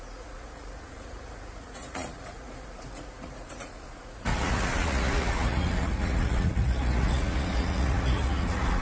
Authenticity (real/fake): fake